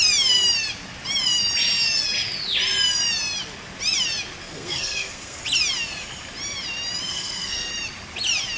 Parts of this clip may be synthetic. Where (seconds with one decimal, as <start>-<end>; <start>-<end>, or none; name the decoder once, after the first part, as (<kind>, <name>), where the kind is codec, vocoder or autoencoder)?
4.4-5.4 (codec, SNAC); 7.1-7.7